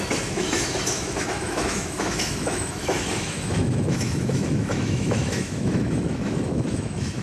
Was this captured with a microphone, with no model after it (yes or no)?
no